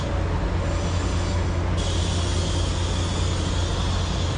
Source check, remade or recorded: recorded